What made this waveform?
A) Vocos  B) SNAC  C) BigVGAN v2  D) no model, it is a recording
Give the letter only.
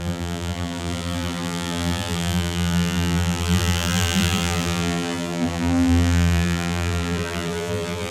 C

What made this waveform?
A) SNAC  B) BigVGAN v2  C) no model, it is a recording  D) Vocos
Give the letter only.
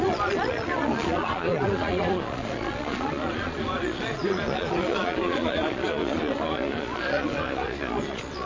D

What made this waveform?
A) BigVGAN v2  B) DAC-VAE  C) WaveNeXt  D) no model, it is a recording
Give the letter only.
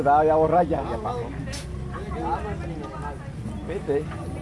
D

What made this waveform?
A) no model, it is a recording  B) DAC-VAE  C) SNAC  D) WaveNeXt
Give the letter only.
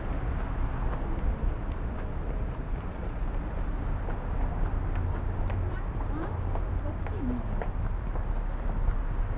A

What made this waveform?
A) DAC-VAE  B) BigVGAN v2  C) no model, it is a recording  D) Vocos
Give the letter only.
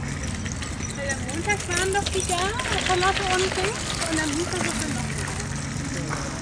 C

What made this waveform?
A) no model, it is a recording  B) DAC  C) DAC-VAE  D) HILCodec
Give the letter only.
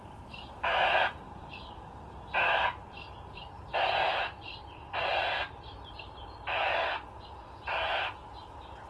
A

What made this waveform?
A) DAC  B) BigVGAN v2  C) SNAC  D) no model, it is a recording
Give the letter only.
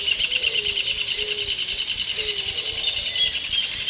D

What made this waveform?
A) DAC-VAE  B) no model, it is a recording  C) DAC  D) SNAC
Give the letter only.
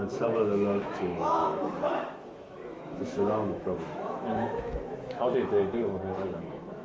A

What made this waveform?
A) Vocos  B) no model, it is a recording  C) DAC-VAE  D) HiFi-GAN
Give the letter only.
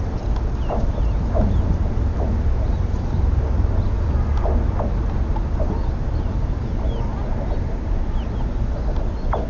B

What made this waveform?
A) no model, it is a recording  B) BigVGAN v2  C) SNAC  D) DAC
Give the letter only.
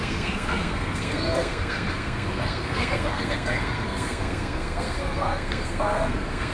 C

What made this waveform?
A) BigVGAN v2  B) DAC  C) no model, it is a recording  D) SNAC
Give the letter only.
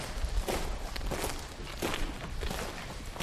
C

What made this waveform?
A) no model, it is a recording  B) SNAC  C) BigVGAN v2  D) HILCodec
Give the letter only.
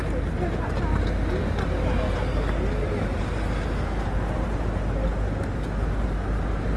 A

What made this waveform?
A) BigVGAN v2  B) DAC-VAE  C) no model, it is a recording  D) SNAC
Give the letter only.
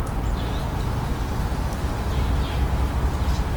C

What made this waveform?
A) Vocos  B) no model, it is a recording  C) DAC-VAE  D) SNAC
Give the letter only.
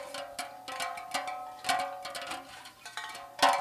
B